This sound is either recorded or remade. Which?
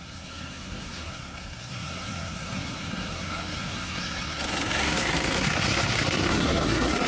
remade